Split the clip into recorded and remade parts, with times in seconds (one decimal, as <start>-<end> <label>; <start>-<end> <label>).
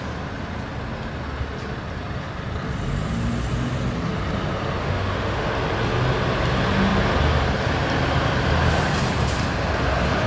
0.0-4.8 recorded; 4.8-5.5 remade; 5.5-10.3 recorded